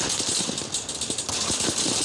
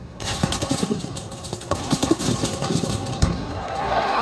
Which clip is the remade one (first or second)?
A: second